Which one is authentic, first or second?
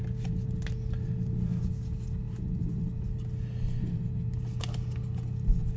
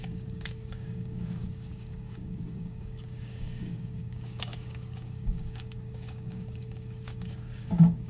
first